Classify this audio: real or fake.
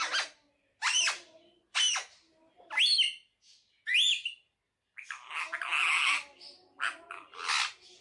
real